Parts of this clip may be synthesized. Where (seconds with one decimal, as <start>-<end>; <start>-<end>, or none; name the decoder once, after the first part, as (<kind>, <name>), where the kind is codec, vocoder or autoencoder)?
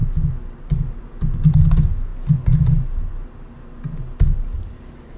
none